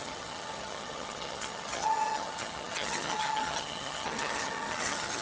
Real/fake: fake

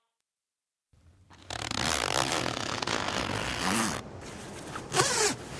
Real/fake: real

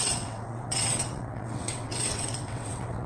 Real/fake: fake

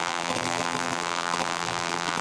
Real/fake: fake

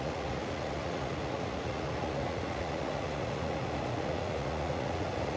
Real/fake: fake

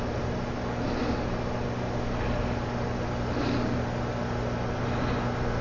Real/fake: real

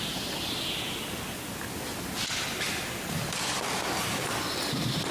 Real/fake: real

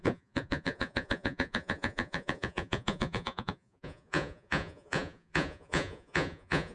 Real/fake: fake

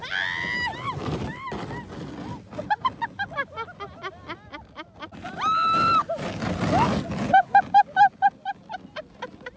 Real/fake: real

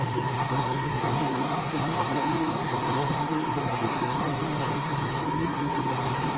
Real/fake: fake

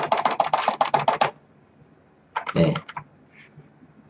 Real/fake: real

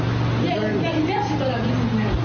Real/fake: real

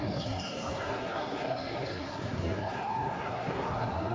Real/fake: fake